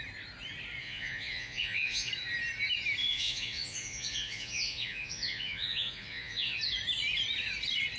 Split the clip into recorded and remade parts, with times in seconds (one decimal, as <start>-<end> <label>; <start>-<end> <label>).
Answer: 0.0-0.8 recorded; 0.8-2.1 remade; 2.1-3.0 recorded; 3.0-6.6 remade; 6.6-8.0 recorded

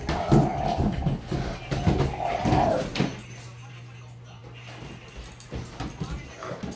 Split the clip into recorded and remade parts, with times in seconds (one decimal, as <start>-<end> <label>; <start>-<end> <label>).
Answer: 0.0-6.8 recorded

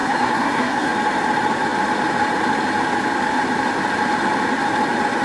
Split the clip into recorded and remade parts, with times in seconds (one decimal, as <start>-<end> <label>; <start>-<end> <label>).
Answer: 0.0-0.9 remade; 0.9-5.2 recorded